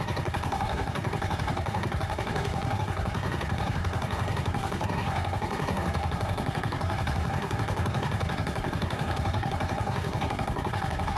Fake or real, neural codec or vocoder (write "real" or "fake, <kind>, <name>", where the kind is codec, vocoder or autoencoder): fake, codec, SNAC